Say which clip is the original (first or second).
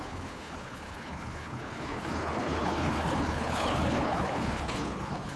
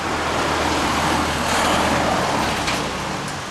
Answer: second